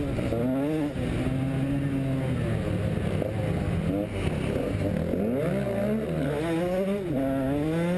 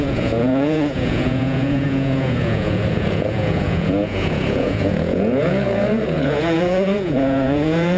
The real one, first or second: first